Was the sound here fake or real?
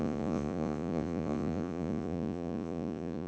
fake